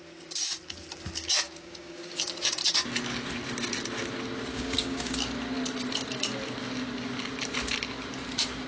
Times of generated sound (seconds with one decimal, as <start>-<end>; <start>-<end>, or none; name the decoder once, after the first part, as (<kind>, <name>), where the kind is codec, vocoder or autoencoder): 1.2-2.2 (codec, DAC); 4.5-5.2